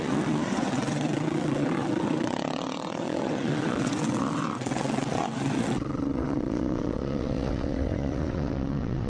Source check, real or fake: fake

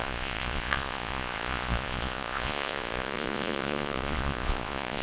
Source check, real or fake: fake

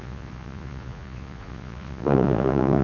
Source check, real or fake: fake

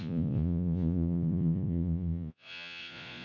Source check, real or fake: fake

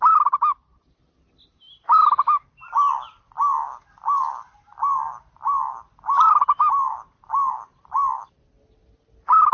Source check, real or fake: real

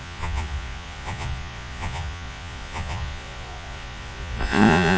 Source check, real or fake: fake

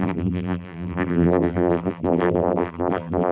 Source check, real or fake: fake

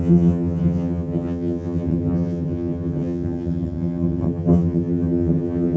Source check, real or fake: fake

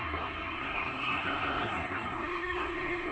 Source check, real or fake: fake